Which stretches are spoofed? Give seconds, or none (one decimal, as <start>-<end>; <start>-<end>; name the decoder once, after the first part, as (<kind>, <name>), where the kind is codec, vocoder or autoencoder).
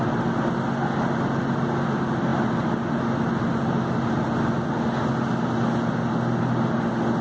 none